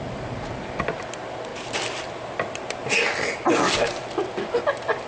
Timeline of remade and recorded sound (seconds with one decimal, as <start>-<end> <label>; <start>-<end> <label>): 0.0-5.1 recorded